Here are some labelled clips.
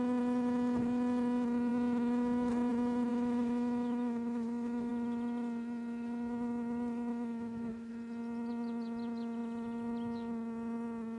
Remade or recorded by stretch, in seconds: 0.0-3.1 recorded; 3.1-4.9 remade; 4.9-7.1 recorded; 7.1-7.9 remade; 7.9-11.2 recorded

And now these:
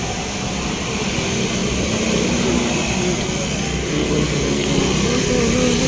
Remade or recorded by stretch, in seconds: 0.0-4.0 recorded; 4.0-4.7 remade; 4.7-5.9 recorded